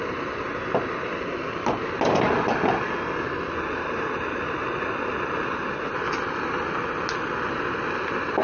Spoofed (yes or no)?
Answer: no